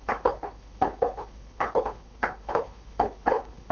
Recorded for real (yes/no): no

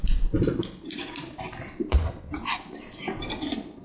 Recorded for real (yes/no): no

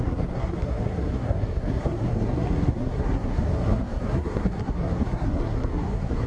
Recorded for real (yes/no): no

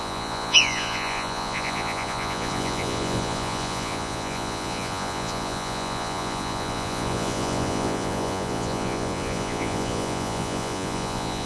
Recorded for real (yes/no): no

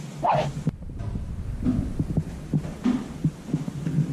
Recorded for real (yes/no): yes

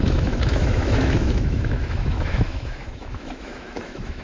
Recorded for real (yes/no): no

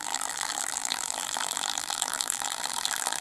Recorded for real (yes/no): no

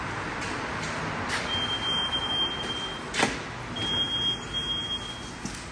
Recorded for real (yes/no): yes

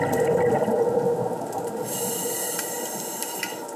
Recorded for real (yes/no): yes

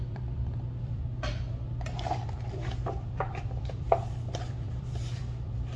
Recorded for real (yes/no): no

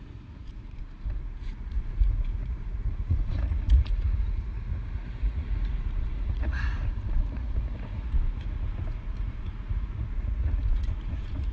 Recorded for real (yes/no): no